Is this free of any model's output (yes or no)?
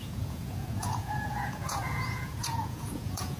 no